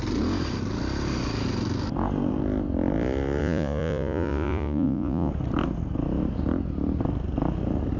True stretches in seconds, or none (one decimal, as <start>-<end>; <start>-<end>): 0.0-3.4; 5.3-8.0